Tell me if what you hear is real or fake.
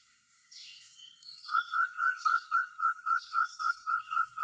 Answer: fake